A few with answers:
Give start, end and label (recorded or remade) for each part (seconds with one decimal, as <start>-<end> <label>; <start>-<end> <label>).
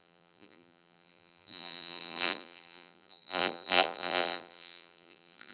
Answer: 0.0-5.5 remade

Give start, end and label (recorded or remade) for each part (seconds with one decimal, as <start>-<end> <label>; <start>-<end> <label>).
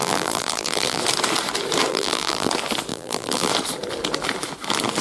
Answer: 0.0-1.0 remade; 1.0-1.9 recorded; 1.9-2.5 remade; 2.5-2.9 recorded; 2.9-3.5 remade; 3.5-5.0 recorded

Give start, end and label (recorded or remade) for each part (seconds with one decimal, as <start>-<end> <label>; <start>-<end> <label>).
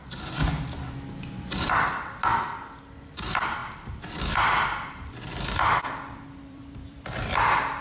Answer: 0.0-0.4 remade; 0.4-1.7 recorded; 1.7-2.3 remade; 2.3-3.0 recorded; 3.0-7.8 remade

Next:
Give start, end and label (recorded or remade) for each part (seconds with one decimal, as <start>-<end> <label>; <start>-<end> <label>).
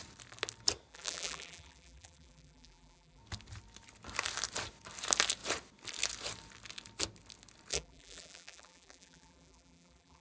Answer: 0.0-0.9 recorded; 0.9-3.2 remade; 3.2-7.7 recorded; 7.7-10.2 remade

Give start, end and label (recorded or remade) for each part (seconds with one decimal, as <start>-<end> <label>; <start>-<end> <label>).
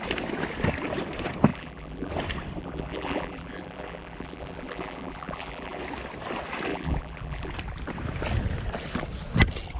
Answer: 0.0-1.5 recorded; 1.5-2.1 remade; 2.1-2.6 recorded; 2.6-5.8 remade; 5.8-6.7 recorded; 6.7-7.5 remade; 7.5-9.8 recorded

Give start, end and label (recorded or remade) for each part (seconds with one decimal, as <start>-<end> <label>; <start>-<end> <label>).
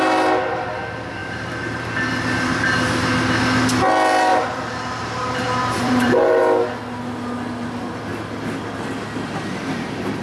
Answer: 0.0-1.2 recorded; 1.2-1.9 remade; 1.9-4.3 recorded; 4.3-6.4 remade; 6.4-10.2 recorded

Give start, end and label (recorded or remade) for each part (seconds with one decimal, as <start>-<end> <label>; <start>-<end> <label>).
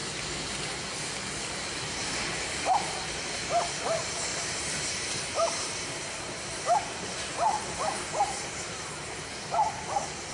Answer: 0.0-2.0 recorded; 2.0-2.7 remade; 2.7-4.3 recorded; 4.3-9.2 remade; 9.2-10.3 recorded